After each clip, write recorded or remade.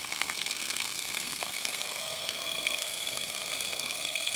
remade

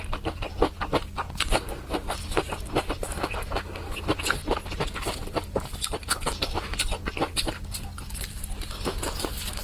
recorded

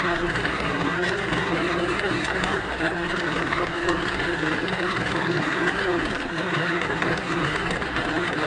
remade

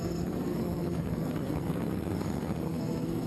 remade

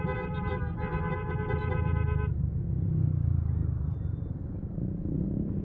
recorded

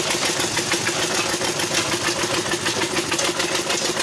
recorded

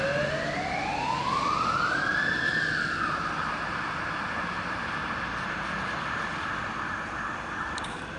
recorded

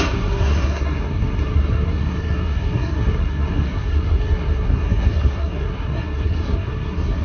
remade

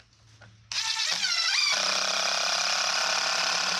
recorded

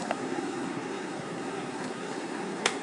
remade